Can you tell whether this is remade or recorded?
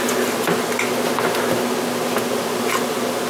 recorded